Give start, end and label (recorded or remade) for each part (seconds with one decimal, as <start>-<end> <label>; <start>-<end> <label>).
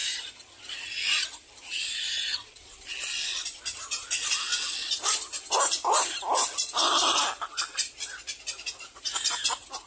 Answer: 0.0-9.9 recorded